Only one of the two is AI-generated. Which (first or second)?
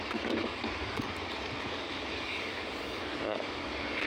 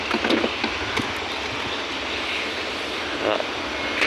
first